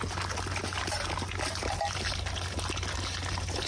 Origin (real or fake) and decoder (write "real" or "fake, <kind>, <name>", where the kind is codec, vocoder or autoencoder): real